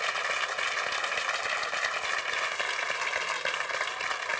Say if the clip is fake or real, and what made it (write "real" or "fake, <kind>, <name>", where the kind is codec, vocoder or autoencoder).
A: real